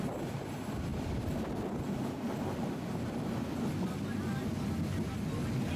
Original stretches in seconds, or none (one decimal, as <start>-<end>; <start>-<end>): 0.0-0.9; 2.6-5.8

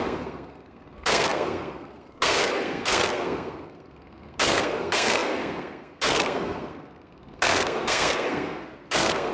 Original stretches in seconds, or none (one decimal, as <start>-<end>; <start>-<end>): none

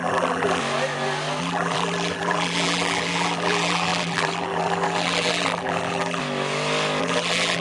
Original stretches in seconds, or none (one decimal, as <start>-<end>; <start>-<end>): 0.6-1.4; 6.2-7.0

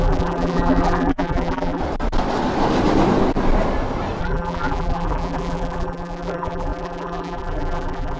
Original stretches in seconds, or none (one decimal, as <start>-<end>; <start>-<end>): 1.8-4.2